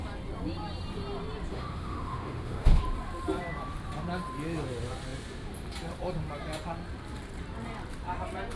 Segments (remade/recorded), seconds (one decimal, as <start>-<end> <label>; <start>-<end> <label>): 0.0-1.5 recorded; 1.5-2.8 remade; 2.8-8.6 recorded